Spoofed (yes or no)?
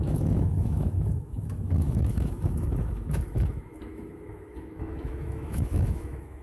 yes